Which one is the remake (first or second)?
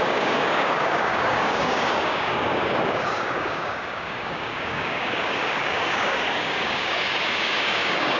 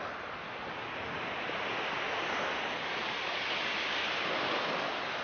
first